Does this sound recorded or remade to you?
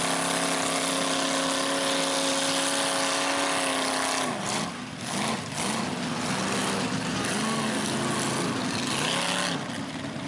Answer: recorded